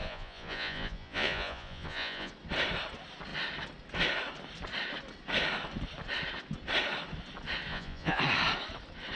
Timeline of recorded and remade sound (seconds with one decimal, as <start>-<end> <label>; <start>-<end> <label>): 0.0-2.3 remade; 2.3-7.7 recorded; 7.7-8.2 remade; 8.2-9.2 recorded